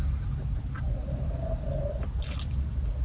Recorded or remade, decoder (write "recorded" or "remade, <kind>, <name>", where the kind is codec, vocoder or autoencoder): recorded